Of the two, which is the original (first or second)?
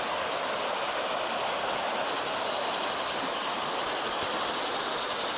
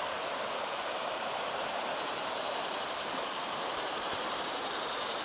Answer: first